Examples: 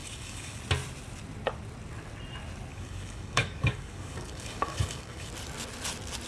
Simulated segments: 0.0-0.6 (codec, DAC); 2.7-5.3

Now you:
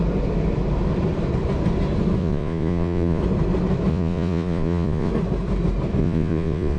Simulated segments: 2.2-3.2 (vocoder, Vocos); 3.9-5.1; 6.0-6.8

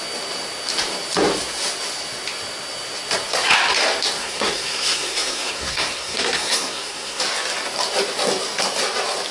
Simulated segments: 4.2-7.2 (codec, SNAC)

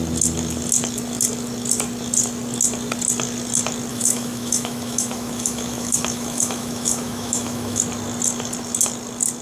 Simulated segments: 3.9-7.8 (autoencoder, DAC-VAE)

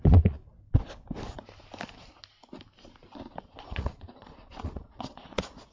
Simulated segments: 0.0-0.4 (vocoder, Vocos); 3.4-5.7

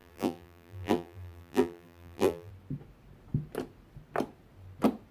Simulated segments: 0.0-2.5 (vocoder, BigVGAN v2)

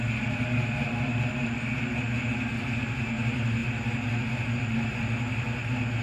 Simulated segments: none